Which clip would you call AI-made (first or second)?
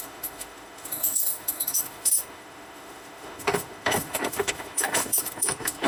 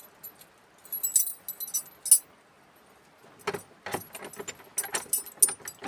first